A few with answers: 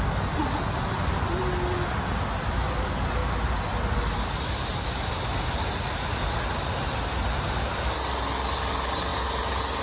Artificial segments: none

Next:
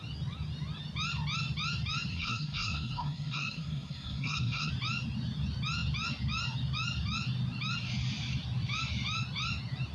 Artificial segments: 2.1-4.7 (codec, SNAC)

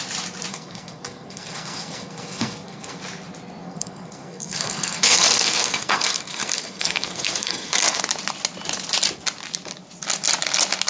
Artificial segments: 0.5-3.0 (codec, SNAC); 3.6-8.0

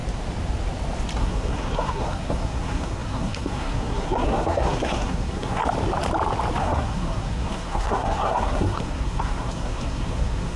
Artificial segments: 1.2-5.6 (codec, SNAC); 6.6-10.6

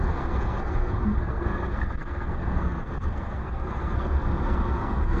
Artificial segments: 0.0-5.2 (codec, SNAC)

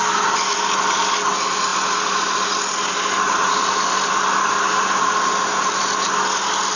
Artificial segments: none

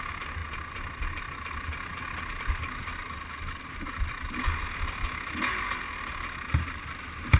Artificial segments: none